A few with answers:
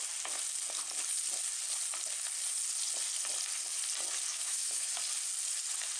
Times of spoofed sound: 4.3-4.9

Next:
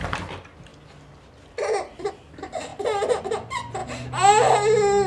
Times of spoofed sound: none

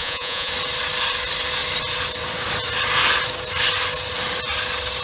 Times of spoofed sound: 0.0-0.5